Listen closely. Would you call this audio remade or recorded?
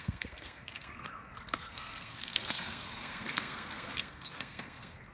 remade